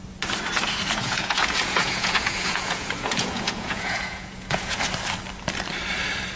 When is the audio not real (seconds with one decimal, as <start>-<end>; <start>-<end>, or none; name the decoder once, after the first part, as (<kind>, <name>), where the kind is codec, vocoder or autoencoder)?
1.0-4.8 (vocoder, Vocos)